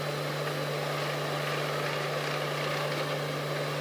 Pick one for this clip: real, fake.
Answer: real